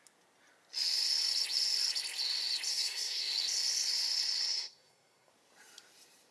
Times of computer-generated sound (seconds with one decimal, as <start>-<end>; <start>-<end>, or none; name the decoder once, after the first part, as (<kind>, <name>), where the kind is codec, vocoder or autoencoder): 2.7-3.3 (codec, SNAC); 4.5-5.3